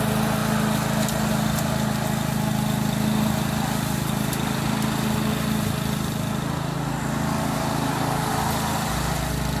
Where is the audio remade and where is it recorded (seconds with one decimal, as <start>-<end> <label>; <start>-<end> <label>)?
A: 0.0-7.4 recorded; 7.4-8.3 remade; 8.3-9.6 recorded